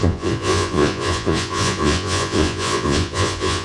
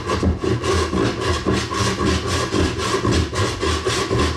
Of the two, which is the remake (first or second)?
first